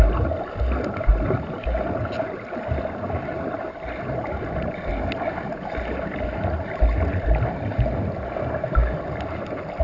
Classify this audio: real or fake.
real